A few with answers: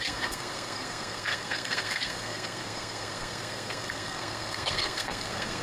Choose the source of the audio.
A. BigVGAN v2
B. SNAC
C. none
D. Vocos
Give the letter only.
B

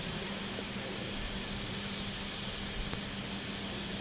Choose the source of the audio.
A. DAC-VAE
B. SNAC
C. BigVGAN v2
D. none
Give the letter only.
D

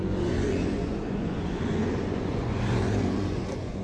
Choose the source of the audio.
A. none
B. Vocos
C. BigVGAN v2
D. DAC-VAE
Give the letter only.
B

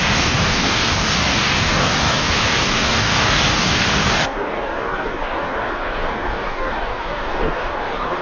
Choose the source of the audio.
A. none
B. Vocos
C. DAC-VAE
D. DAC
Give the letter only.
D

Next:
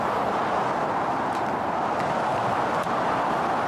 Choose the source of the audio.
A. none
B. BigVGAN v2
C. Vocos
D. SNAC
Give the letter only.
A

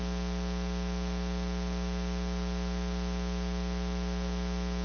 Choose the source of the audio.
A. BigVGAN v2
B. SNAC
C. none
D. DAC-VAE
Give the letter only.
C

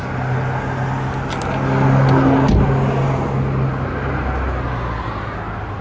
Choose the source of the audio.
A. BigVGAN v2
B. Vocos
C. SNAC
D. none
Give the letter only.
D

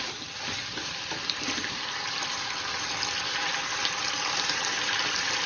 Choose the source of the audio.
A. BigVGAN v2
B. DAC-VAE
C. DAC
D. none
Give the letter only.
A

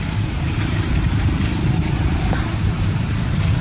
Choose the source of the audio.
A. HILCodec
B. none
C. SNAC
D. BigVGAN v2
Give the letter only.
D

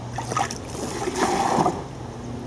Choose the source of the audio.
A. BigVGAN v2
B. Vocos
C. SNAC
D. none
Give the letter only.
D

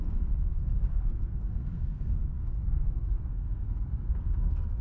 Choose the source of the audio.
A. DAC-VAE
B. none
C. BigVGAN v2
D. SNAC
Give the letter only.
D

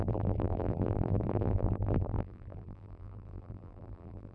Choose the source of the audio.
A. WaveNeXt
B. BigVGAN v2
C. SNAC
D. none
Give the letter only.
B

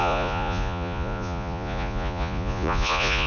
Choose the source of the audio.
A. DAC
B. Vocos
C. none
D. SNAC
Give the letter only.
B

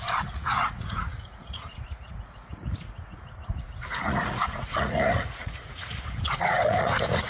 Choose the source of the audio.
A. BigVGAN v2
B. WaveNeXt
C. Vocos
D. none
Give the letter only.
C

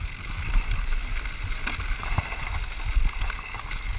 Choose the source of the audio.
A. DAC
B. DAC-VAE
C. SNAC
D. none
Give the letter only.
D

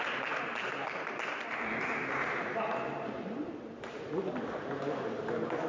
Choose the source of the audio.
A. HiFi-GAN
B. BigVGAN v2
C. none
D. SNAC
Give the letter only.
B